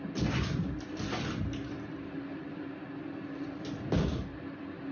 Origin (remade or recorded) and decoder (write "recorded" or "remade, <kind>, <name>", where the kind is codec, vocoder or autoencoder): recorded